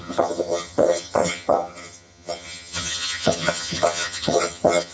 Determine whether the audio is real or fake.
fake